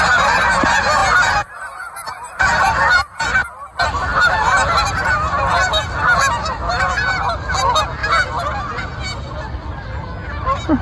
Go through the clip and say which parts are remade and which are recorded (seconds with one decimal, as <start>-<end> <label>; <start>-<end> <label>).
0.0-10.8 recorded